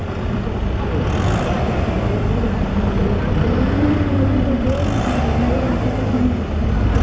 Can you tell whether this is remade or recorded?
recorded